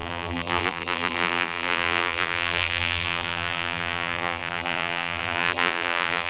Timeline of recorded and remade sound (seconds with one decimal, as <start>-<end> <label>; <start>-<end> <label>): 0.0-6.3 remade